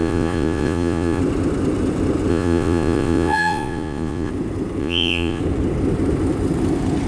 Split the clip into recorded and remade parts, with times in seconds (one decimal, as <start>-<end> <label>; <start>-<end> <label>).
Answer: 0.0-1.2 remade; 1.2-2.3 recorded; 2.3-4.3 remade; 4.3-4.8 recorded; 4.8-5.4 remade; 5.4-7.1 recorded